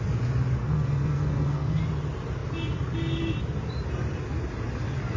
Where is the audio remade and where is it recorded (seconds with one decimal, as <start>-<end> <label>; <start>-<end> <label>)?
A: 0.0-0.6 recorded; 0.6-1.8 remade; 1.8-5.2 recorded